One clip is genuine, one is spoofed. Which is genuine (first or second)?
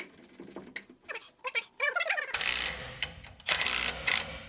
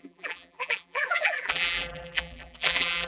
first